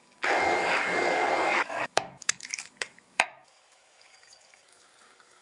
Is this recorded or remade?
remade